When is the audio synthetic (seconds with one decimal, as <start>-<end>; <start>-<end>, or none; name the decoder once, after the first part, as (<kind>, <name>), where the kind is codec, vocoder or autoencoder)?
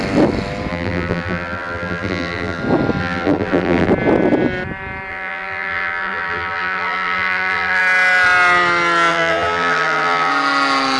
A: 0.7-2.6 (vocoder, BigVGAN v2); 3.0-3.9; 5.1-7.8; 9.1-10.3